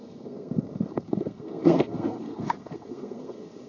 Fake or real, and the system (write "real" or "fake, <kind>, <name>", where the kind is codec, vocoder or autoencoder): fake, codec, SNAC